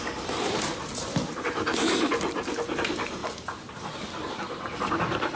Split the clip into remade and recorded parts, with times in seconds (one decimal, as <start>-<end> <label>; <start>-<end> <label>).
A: 0.0-5.4 recorded